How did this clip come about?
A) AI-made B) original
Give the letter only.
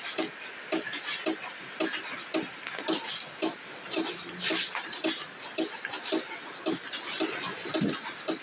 B